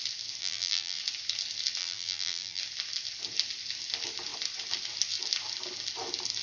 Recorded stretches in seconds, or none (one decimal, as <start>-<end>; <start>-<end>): 0.0-0.4; 1.0-1.8; 2.6-6.4